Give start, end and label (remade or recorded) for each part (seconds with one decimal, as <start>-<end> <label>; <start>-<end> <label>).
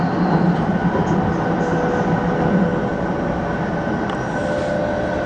0.0-5.3 recorded